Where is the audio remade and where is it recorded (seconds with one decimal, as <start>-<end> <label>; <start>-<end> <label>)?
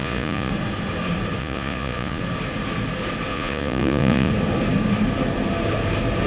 0.0-0.5 remade; 0.5-1.4 recorded; 1.4-2.2 remade; 2.2-3.3 recorded; 3.3-4.3 remade; 4.3-6.3 recorded